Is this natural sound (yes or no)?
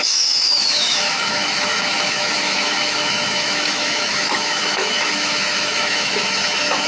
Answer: no